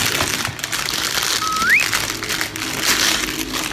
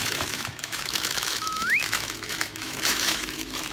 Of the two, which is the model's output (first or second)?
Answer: second